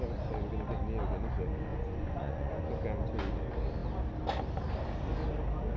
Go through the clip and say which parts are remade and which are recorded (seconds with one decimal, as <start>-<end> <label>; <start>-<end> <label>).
0.0-1.7 recorded; 1.7-2.6 remade; 2.6-5.8 recorded